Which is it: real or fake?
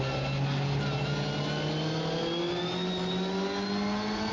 real